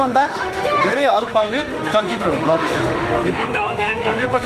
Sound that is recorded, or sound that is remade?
remade